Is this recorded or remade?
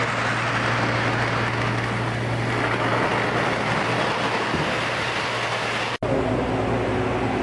recorded